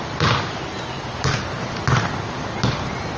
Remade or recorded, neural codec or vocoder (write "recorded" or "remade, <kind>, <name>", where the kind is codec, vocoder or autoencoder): recorded